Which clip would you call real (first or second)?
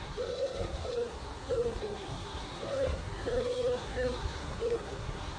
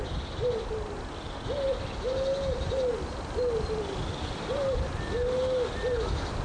second